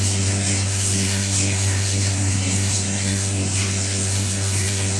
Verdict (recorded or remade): remade